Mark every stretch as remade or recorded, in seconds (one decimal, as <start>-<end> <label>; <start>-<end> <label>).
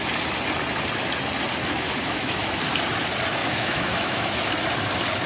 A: 0.0-1.6 recorded; 1.6-2.6 remade; 2.6-3.4 recorded; 3.4-4.5 remade; 4.5-5.3 recorded